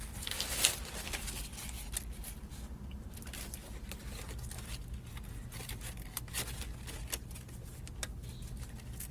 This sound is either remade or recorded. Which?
recorded